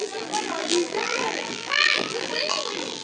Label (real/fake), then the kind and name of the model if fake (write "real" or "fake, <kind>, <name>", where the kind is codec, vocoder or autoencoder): fake, vocoder, BigVGAN v2